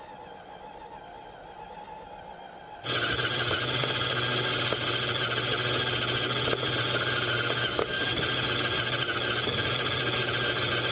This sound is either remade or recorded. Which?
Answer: recorded